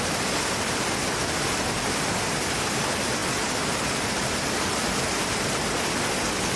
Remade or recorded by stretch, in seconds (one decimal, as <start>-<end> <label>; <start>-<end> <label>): 0.0-6.6 recorded